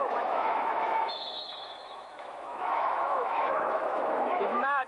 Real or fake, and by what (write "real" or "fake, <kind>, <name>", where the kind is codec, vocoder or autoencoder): fake, autoencoder, DAC-VAE